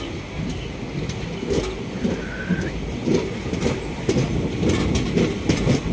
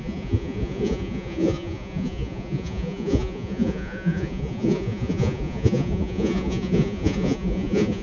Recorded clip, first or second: first